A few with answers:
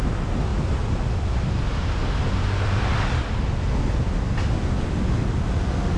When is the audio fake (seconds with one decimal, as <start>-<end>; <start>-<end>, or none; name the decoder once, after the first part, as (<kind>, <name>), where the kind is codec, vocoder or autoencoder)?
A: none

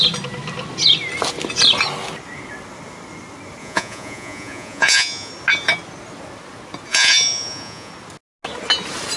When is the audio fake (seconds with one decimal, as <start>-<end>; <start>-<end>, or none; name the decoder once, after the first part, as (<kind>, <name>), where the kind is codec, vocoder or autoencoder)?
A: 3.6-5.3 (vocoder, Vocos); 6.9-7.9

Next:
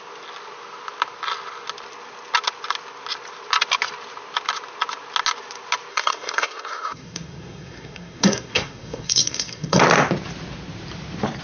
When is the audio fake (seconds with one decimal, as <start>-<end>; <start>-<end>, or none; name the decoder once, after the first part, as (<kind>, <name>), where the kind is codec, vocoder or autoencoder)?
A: 5.9-9.8 (codec, SNAC)

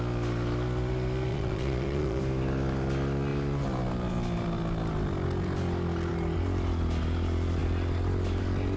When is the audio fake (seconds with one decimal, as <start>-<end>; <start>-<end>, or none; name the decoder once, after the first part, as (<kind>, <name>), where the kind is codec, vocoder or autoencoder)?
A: 1.3-2.2 (vocoder, Vocos)

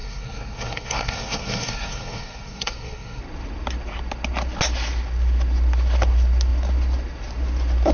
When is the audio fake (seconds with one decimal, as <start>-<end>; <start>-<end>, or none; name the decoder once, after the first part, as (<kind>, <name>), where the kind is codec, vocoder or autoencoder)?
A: 0.0-3.2 (codec, SNAC)